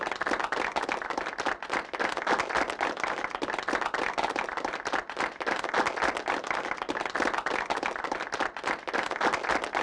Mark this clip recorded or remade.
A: recorded